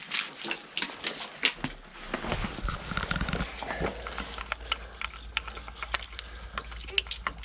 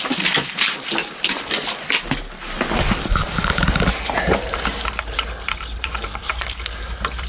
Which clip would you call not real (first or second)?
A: second